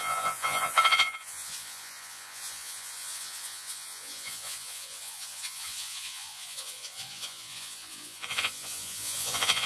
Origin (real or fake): fake